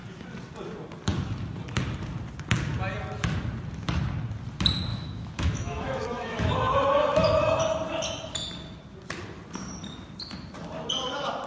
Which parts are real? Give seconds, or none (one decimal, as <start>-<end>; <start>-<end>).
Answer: 0.0-4.9; 6.5-11.5